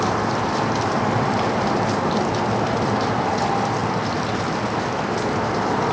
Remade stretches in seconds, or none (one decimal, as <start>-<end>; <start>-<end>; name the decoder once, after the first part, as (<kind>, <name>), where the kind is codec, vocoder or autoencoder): none